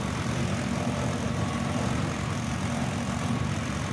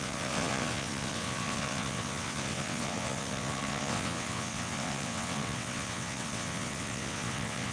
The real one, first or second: first